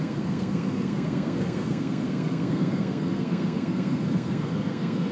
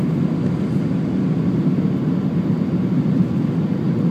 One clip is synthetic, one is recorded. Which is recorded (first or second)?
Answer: second